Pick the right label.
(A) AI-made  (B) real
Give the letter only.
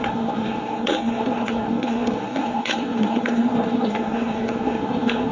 A